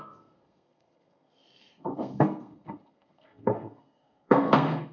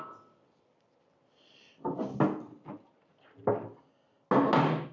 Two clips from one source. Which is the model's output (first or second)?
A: first